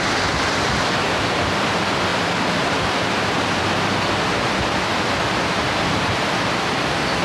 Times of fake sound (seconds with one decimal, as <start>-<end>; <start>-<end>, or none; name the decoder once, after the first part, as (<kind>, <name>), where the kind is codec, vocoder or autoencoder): 0.0-7.2 (vocoder, BigVGAN v2)